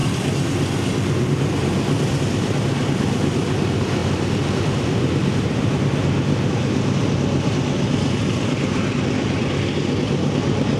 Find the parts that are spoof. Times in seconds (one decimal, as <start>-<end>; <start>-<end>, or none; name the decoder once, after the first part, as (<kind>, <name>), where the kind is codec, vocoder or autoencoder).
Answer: 0.0-2.2 (vocoder, BigVGAN v2); 4.0-6.5